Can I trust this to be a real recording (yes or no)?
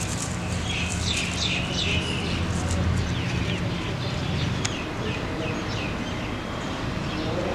yes